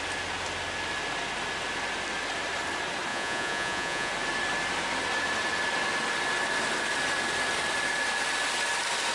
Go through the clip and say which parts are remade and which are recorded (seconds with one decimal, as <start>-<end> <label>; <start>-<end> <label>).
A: 0.0-3.1 recorded; 3.1-4.1 remade; 4.1-9.1 recorded